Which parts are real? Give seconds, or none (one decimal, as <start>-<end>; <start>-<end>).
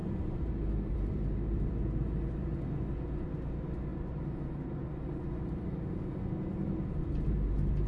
2.4-7.9